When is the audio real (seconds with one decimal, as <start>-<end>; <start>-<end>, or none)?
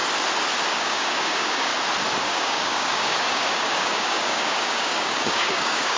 0.0-0.7; 1.7-2.2